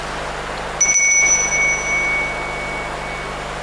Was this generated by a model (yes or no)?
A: no